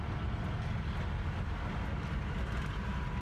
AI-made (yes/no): no